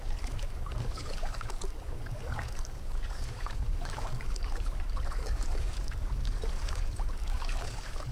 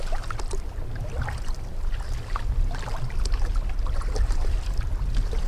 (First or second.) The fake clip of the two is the first